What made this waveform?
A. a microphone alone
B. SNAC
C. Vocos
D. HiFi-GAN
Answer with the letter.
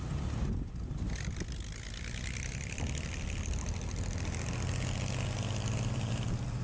A